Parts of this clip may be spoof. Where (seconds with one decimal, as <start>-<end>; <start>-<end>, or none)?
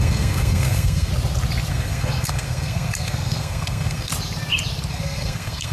0.0-1.1; 1.7-4.1; 4.9-5.7